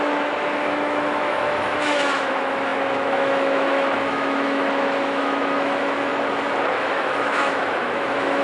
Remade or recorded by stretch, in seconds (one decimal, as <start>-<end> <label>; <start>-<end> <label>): 0.0-6.1 remade; 6.1-6.7 recorded; 6.7-8.4 remade